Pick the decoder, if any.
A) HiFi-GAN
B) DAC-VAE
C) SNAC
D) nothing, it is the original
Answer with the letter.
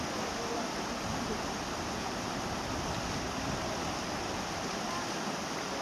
D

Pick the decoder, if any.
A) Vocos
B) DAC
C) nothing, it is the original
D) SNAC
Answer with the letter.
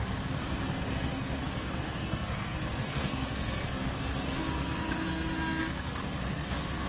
D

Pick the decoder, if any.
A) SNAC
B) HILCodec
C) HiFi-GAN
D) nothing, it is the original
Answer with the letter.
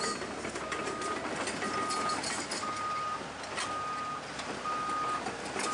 D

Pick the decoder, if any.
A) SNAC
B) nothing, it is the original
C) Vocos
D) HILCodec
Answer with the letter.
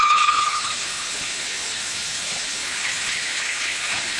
D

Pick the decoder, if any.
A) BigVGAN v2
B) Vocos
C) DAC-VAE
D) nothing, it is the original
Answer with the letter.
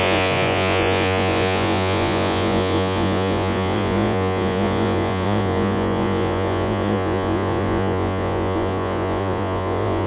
B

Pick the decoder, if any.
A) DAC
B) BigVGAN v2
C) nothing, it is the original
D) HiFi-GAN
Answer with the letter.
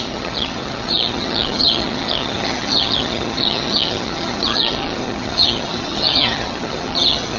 D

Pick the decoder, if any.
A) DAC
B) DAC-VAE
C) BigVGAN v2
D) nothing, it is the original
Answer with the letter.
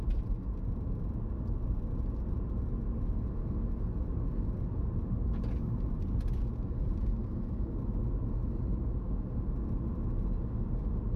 D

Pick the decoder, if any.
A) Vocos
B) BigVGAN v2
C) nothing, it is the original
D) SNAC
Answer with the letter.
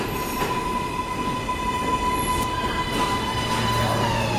C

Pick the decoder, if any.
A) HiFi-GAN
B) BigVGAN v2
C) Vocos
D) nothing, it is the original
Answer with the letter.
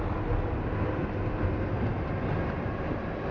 D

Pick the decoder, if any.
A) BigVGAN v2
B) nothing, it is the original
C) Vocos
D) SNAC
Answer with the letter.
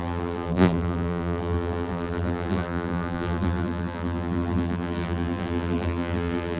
A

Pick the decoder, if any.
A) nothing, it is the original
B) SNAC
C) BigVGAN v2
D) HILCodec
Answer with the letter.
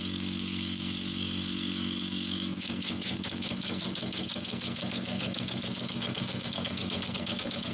B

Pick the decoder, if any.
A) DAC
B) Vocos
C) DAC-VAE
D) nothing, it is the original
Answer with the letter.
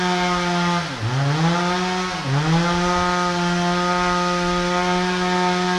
D